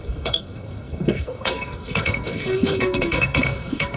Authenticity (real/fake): fake